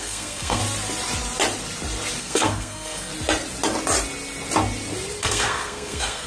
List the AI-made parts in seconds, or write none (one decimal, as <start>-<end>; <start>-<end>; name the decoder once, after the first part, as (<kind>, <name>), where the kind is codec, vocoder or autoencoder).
0.0-0.6 (codec, SNAC); 2.2-3.1; 5.2-6.3